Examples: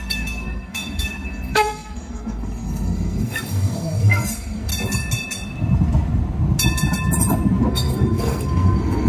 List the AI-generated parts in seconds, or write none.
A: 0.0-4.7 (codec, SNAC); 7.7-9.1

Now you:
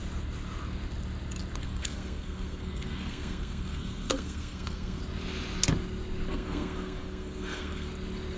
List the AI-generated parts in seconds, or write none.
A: 1.6-5.0 (codec, SNAC); 6.3-7.9